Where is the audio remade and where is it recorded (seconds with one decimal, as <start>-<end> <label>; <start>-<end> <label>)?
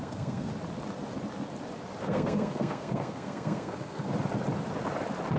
0.0-0.5 remade; 0.5-2.0 recorded; 2.0-4.1 remade; 4.1-5.4 recorded